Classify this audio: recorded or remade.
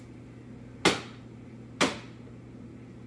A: recorded